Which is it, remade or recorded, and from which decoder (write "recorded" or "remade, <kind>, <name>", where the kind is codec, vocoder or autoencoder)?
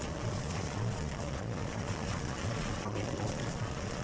remade, vocoder, Vocos